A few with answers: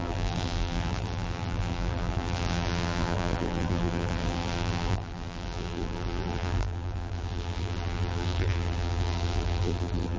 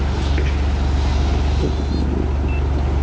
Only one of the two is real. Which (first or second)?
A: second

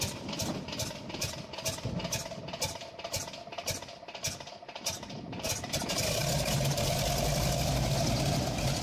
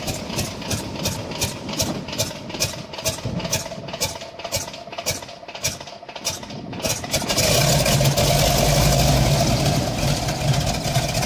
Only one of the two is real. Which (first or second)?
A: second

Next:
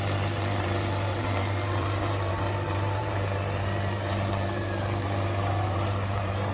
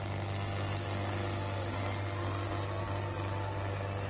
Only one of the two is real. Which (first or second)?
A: second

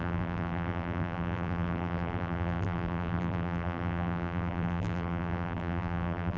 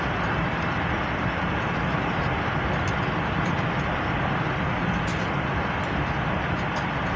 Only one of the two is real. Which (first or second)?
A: second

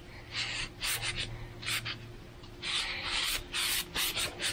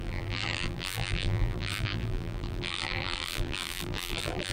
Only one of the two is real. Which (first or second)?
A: first